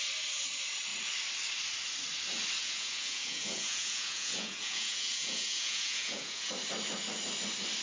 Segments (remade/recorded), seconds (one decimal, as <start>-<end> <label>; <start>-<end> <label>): 0.0-2.6 recorded; 2.6-6.5 remade; 6.5-7.8 recorded